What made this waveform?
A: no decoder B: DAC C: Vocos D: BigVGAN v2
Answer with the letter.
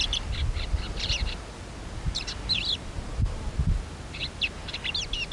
A